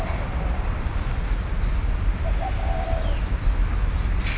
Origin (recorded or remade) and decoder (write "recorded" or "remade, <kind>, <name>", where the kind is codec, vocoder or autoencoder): recorded